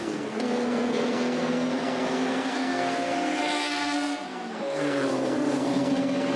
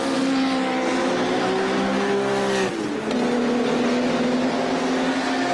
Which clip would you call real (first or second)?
second